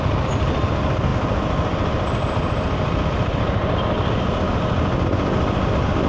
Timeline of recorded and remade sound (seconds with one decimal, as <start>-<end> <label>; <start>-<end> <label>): 0.0-6.1 recorded